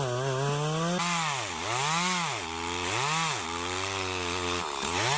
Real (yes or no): yes